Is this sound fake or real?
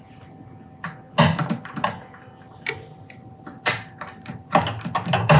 real